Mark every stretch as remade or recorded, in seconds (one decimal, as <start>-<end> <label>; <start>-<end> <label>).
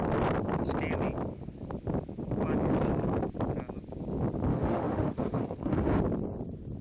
0.0-4.5 recorded; 4.5-6.0 remade; 6.0-6.8 recorded